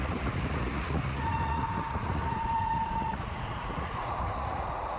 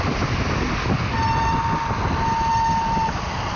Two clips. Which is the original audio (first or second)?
second